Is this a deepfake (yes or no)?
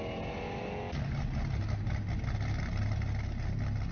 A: no